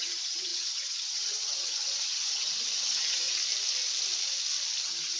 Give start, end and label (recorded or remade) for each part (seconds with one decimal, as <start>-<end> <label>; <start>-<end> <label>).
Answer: 0.0-3.4 remade; 3.4-4.8 recorded; 4.8-5.2 remade